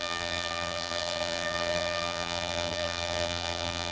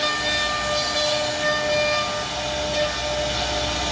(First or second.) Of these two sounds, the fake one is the first